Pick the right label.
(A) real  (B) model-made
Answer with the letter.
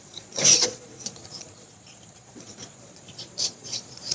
B